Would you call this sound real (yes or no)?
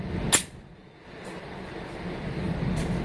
yes